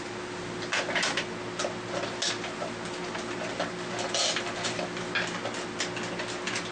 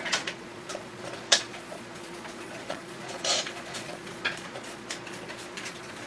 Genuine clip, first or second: first